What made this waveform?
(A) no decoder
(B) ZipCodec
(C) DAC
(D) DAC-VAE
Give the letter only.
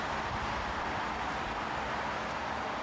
A